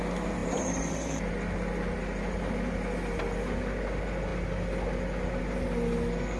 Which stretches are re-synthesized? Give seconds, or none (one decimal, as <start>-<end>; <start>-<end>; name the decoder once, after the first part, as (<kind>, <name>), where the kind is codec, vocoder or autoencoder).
0.4-1.3 (vocoder, BigVGAN v2)